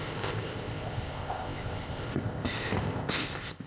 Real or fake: fake